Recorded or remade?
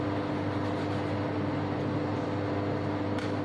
recorded